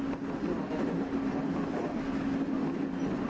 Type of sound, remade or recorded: recorded